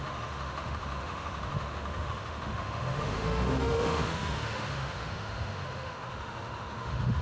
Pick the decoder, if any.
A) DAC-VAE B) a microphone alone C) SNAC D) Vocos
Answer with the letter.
A